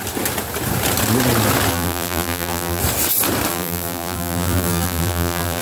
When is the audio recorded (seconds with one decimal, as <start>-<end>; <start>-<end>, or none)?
0.0-1.7; 2.8-3.5